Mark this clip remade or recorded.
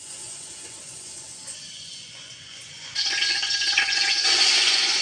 remade